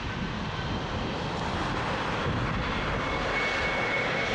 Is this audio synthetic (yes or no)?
no